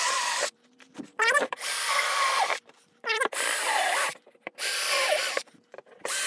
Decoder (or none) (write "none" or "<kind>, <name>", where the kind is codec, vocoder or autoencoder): vocoder, BigVGAN v2